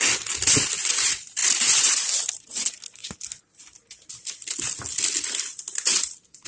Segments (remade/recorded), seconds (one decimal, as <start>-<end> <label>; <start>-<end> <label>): 0.0-6.5 recorded